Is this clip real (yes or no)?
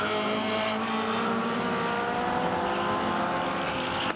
yes